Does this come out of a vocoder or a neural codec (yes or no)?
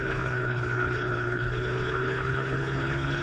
yes